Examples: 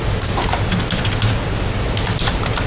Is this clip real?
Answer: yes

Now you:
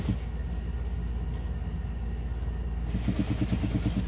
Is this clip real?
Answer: yes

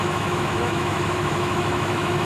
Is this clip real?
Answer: no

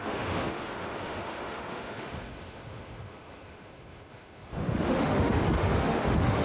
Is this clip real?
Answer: no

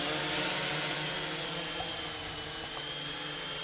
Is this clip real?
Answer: yes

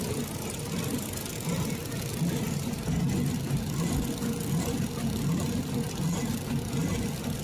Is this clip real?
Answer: yes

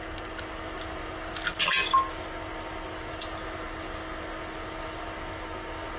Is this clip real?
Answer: yes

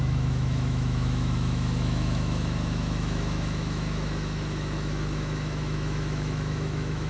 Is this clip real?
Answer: no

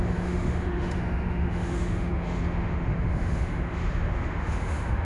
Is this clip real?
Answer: no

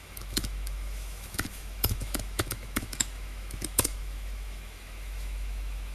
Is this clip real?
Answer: no